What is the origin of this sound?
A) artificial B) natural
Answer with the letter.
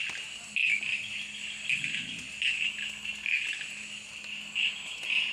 B